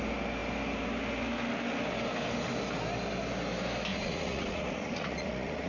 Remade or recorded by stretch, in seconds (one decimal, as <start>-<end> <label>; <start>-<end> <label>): 0.0-3.9 recorded; 3.9-5.7 remade